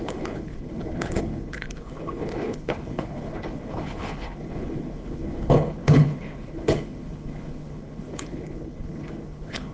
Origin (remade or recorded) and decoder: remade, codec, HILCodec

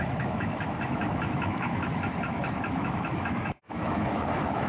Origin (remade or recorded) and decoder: remade, autoencoder, DAC-VAE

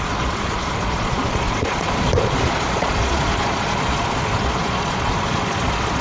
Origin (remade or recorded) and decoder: remade, vocoder, Vocos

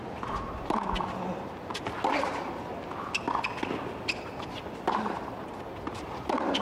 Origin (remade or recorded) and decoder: recorded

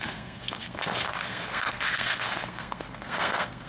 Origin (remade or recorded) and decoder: remade, codec, SNAC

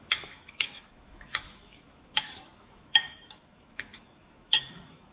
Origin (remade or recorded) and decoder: remade, autoencoder, DAC-VAE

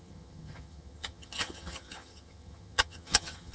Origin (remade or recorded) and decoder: remade, vocoder, HiFi-GAN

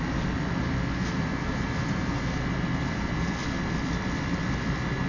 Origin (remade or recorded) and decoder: recorded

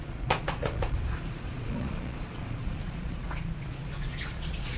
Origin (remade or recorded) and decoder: remade, vocoder, Vocos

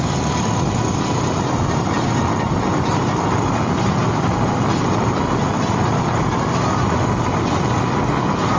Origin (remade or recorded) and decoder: recorded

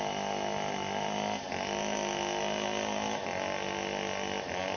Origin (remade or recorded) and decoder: recorded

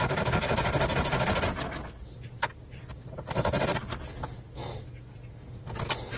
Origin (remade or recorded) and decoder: recorded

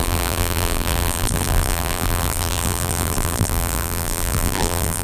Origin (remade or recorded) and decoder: remade, vocoder, BigVGAN v2